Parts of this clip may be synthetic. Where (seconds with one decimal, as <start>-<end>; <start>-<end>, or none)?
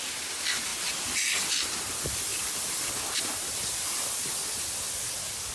none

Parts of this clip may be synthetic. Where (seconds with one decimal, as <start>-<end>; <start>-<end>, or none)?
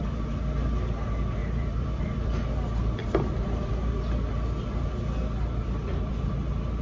1.4-2.5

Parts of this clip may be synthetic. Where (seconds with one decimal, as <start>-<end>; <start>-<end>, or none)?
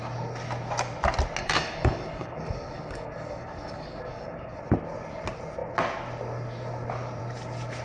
1.4-4.6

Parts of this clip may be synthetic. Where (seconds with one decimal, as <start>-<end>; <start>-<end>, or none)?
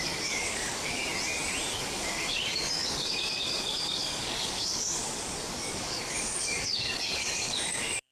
0.0-1.0; 1.7-8.1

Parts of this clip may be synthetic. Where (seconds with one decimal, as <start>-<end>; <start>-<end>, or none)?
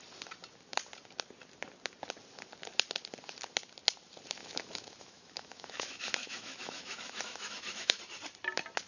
4.4-8.0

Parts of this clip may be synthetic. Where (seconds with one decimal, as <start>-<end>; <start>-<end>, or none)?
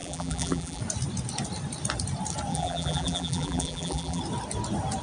0.0-0.8; 2.5-4.2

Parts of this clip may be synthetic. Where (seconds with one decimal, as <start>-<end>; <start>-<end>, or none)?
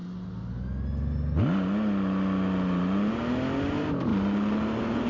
none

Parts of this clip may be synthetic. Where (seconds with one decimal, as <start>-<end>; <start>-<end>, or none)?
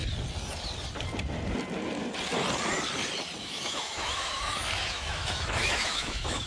3.4-6.5